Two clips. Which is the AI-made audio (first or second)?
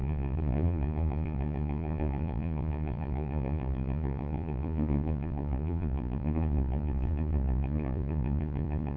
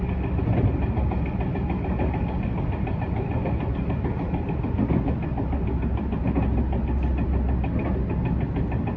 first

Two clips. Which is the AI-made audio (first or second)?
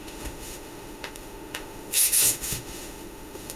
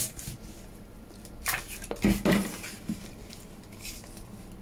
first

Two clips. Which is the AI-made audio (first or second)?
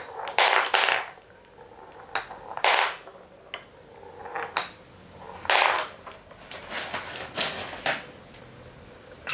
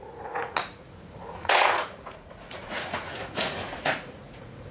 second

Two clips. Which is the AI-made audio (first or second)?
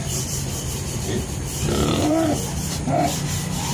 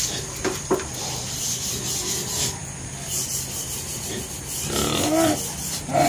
first